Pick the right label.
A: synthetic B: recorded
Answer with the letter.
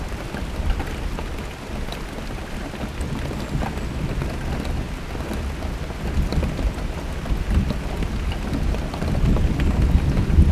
B